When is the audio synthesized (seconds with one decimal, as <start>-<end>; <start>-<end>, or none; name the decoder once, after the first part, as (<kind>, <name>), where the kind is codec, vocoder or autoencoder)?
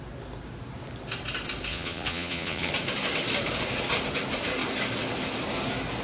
1.7-2.7 (vocoder, Vocos)